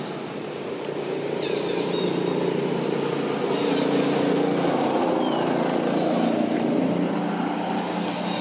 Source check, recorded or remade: recorded